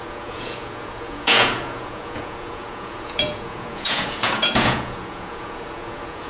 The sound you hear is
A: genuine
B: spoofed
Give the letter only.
B